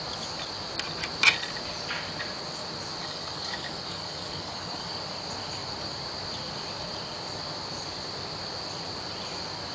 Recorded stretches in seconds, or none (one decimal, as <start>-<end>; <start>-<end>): 0.0-3.0; 4.9-9.7